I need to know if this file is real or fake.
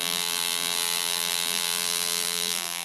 fake